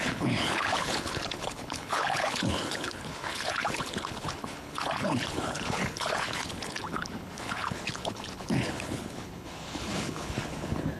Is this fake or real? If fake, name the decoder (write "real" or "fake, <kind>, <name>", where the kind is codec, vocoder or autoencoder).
fake, codec, HILCodec